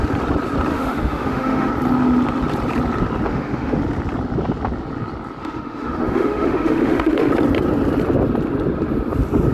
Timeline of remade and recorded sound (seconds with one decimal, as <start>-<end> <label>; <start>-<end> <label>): 0.0-0.7 recorded; 0.7-1.7 remade; 1.7-3.3 recorded; 3.3-3.8 remade; 3.8-5.4 recorded; 5.4-7.3 remade; 7.3-9.5 recorded